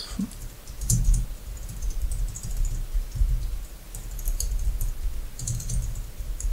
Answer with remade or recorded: recorded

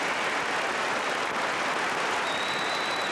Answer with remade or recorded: recorded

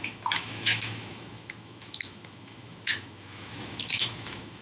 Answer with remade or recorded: remade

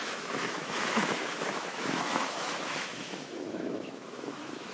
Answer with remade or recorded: remade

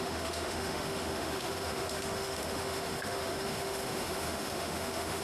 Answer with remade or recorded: remade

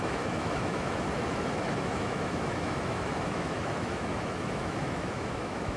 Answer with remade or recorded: remade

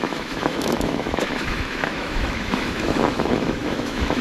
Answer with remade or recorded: remade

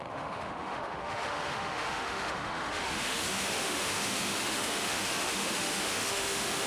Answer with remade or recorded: remade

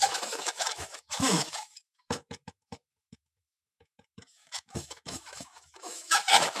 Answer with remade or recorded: remade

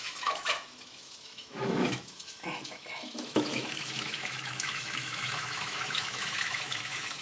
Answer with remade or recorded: remade